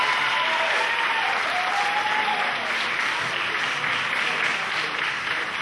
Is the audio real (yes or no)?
yes